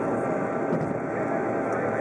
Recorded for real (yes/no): yes